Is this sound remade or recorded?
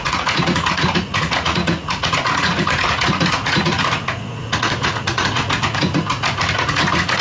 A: remade